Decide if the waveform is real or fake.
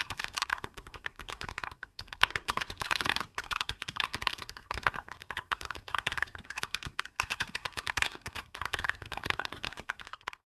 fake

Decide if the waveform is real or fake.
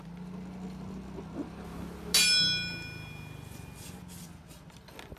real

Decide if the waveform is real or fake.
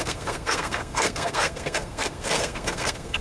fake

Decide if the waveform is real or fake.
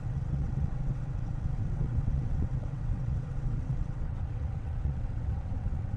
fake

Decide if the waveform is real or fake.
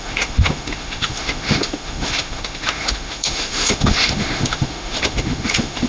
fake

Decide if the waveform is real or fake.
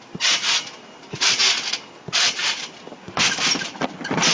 real